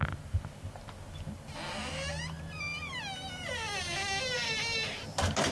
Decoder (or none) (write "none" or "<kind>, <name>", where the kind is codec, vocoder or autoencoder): none